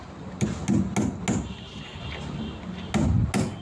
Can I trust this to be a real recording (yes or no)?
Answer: yes